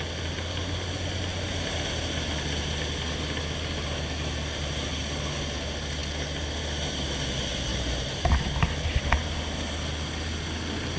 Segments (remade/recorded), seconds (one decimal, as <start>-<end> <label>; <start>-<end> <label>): 0.0-7.7 recorded; 7.7-9.1 remade; 9.1-11.0 recorded